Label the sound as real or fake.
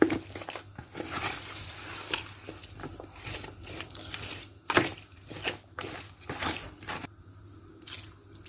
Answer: real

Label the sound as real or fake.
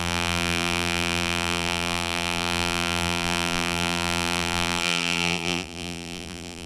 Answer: fake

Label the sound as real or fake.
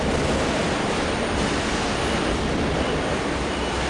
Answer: fake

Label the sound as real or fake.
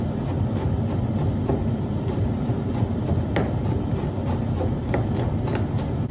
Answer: real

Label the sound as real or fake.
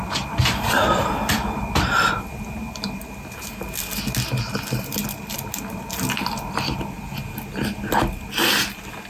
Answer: real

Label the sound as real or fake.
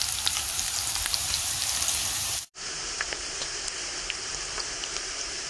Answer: fake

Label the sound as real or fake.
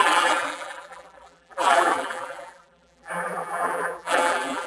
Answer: fake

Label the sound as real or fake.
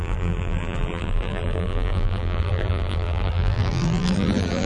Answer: fake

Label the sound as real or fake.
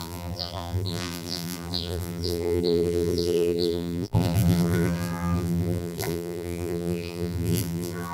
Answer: fake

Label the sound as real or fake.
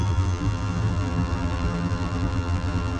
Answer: fake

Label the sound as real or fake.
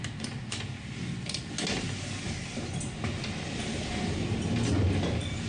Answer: real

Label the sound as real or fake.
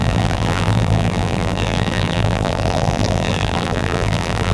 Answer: fake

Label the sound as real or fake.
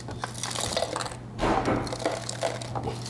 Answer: real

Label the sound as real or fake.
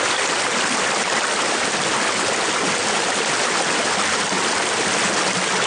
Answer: real